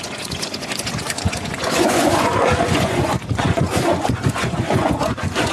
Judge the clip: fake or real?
fake